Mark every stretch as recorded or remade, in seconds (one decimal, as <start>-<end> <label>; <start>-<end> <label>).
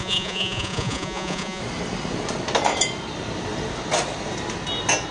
0.0-1.6 remade; 1.6-5.1 recorded